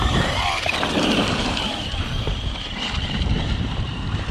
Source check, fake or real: fake